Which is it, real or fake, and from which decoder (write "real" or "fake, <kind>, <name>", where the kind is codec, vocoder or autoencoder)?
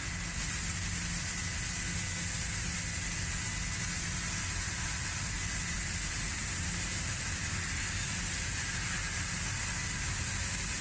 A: real